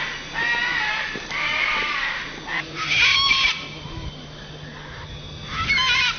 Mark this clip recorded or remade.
recorded